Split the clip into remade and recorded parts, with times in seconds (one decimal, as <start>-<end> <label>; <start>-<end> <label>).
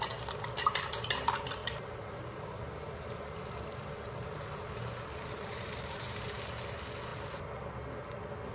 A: 0.0-1.6 recorded; 1.6-6.4 remade; 6.4-8.5 recorded